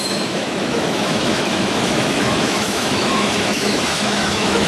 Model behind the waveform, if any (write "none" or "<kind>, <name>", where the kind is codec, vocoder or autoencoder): autoencoder, DAC-VAE